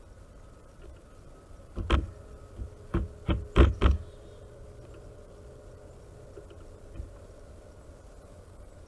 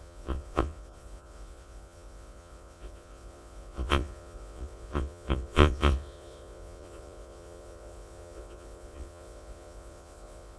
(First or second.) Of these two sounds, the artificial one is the second